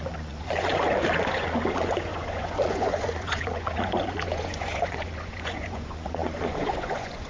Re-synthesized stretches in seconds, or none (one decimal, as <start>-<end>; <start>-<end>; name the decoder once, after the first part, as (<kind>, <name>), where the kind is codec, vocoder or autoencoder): 0.0-7.3 (vocoder, Vocos)